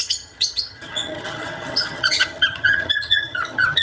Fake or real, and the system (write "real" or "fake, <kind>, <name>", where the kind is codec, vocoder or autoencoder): fake, vocoder, HiFi-GAN